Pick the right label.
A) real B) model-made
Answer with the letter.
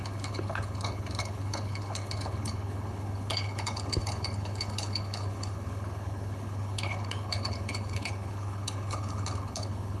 B